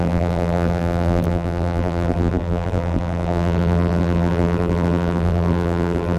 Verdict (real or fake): fake